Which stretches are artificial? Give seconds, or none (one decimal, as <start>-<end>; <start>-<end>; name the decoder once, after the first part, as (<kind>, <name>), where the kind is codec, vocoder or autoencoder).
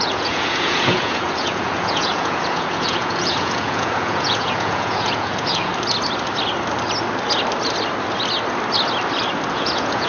0.0-5.7 (vocoder, Vocos); 9.5-10.1